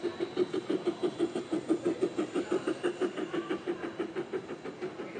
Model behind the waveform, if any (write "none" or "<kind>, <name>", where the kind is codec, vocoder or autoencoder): none